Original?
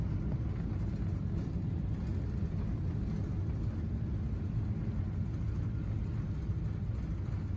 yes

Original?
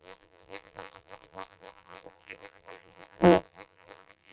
no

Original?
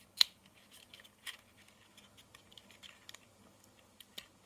yes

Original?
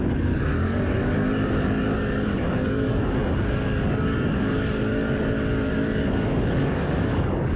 no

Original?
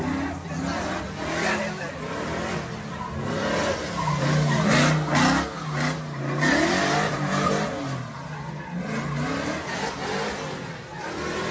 yes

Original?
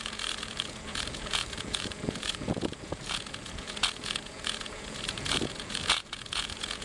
no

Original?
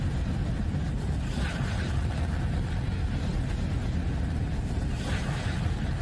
yes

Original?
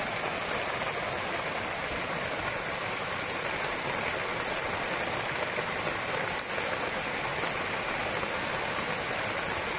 yes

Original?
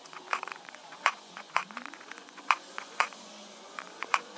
no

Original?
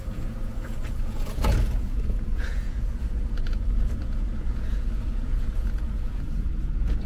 no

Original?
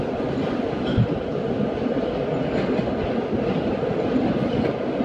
yes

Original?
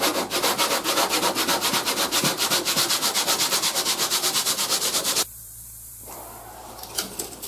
no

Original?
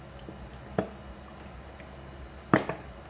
yes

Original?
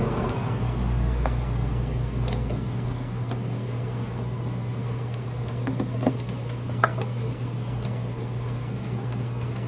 no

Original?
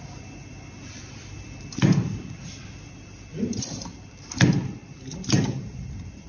no